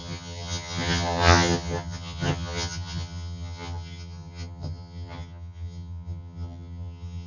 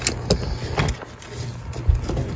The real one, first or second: second